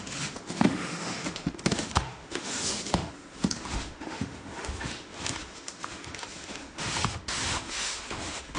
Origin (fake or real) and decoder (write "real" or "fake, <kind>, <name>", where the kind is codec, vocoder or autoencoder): fake, autoencoder, DAC-VAE